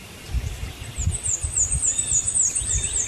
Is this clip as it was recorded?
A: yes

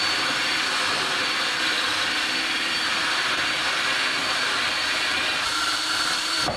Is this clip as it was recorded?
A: no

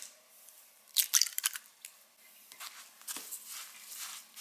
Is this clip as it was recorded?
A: yes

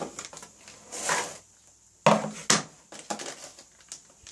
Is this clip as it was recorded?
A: yes